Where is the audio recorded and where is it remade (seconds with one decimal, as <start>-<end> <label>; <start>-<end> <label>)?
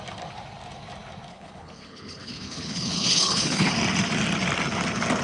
0.0-1.3 recorded; 1.3-3.7 remade; 3.7-5.2 recorded